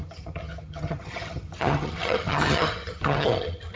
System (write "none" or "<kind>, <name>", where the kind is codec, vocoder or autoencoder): vocoder, HiFi-GAN